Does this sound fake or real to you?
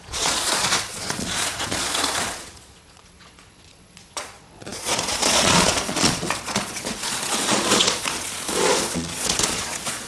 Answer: fake